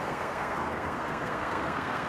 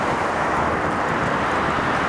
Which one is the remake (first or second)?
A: first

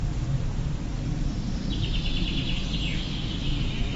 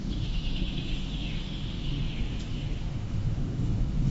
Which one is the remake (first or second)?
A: second